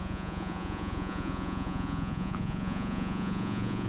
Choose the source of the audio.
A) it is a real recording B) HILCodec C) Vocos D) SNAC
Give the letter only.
C